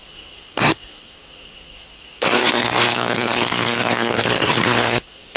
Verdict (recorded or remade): remade